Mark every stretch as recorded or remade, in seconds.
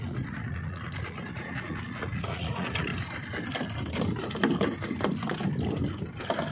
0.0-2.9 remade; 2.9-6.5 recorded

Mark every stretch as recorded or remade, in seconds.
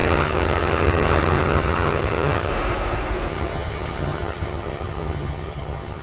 0.0-2.5 remade; 2.5-3.3 recorded; 3.3-6.0 remade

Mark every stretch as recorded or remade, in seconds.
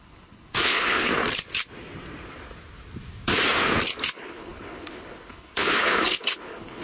0.0-1.1 remade; 1.1-4.1 recorded; 4.1-6.8 remade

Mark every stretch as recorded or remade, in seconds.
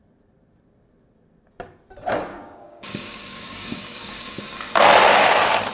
0.0-2.3 recorded; 2.3-4.4 remade; 4.4-5.7 recorded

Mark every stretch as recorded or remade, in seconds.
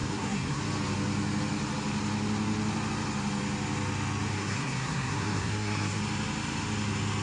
0.0-0.6 remade; 0.6-4.3 recorded; 4.3-6.0 remade; 6.0-7.2 recorded